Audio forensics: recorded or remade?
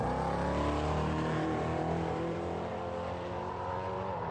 remade